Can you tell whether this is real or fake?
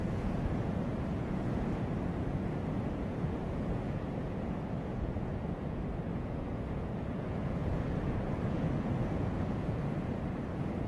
fake